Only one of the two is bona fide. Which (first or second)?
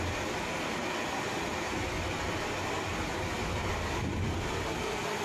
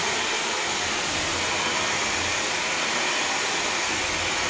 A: second